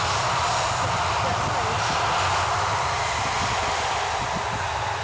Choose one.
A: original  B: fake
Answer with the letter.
A